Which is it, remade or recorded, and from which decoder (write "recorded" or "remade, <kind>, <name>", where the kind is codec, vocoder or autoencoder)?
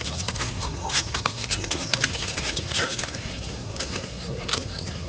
remade, codec, SNAC